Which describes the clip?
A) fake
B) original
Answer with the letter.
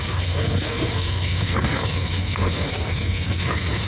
A